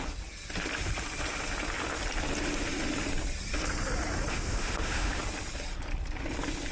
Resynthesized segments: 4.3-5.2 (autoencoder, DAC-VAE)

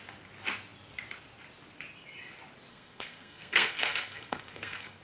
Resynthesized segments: 2.7-5.0 (codec, SNAC)

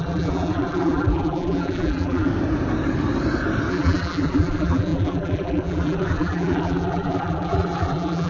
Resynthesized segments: 0.0-2.3 (vocoder, BigVGAN v2); 3.7-8.3

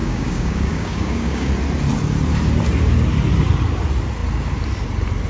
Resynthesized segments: 0.0-1.5 (codec, DAC)

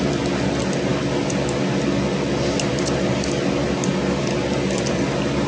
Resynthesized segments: none

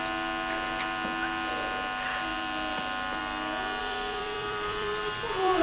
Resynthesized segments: 3.8-5.6 (vocoder, BigVGAN v2)

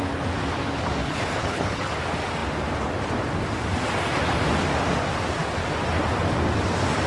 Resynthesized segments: 1.0-2.0 (codec, HILCodec)